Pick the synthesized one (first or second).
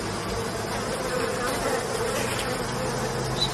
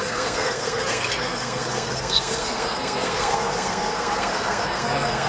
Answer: second